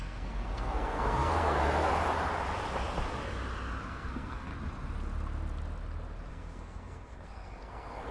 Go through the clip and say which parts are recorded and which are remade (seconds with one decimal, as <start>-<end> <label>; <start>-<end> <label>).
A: 0.0-1.9 remade; 1.9-3.9 recorded; 3.9-4.5 remade; 4.5-6.3 recorded; 6.3-8.1 remade